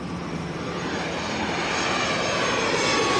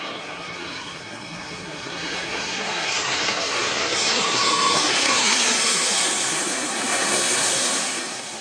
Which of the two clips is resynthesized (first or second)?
second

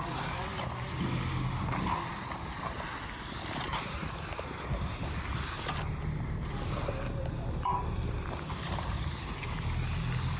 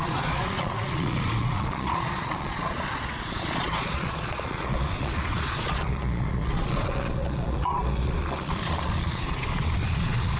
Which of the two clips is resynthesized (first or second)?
second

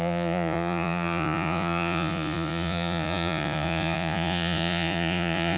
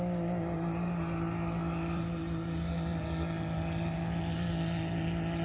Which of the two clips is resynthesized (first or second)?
first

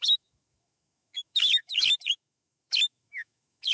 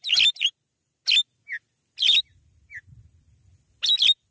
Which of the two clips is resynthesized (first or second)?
first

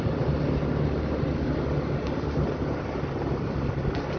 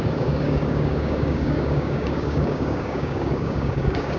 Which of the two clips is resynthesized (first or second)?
second